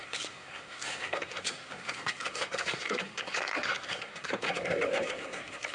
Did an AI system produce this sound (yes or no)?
yes